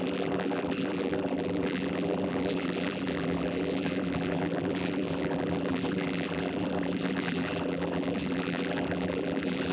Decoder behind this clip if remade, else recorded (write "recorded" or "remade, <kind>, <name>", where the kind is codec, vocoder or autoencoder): remade, vocoder, BigVGAN v2